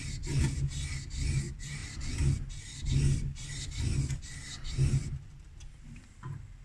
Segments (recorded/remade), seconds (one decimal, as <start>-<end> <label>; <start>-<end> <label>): 0.0-6.6 recorded